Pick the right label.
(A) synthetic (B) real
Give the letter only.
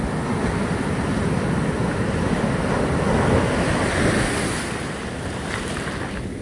B